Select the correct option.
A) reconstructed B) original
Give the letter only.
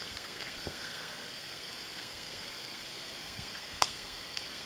A